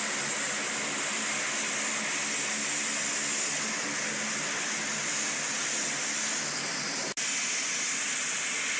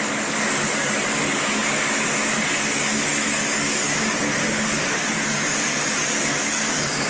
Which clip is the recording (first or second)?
first